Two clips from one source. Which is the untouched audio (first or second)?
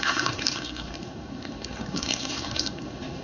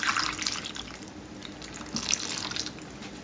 second